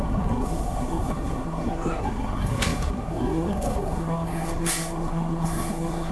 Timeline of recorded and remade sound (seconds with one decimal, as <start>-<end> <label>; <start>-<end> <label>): 0.0-6.1 remade